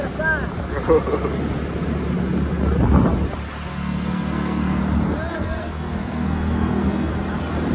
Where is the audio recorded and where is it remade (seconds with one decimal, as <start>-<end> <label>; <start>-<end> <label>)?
0.0-3.7 recorded; 3.7-4.8 remade; 4.8-5.3 recorded; 5.3-7.1 remade; 7.1-7.7 recorded